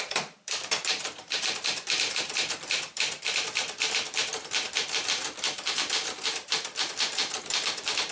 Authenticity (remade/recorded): remade